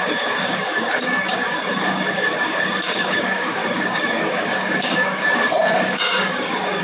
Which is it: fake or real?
fake